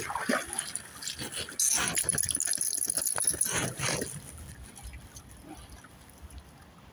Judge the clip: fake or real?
real